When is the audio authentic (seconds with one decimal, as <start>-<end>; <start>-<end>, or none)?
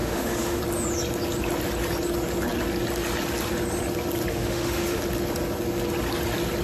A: 0.6-4.3; 5.0-6.6